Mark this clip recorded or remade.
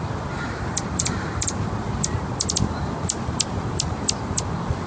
remade